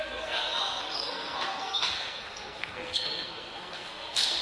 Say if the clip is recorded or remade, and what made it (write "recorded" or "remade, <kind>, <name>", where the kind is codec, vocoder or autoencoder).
remade, codec, SNAC